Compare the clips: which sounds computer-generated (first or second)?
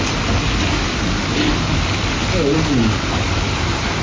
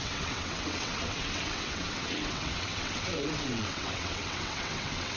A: second